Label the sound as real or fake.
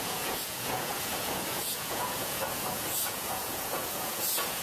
fake